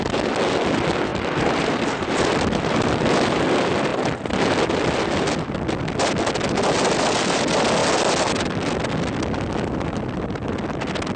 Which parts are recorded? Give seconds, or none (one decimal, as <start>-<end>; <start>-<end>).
0.0-1.1; 2.9-11.2